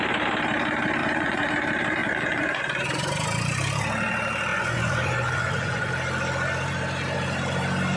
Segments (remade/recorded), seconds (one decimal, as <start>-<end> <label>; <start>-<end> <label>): 0.0-1.0 recorded; 1.0-1.5 remade; 1.5-2.0 recorded; 2.0-2.6 remade; 2.6-4.5 recorded; 4.5-5.9 remade; 5.9-8.0 recorded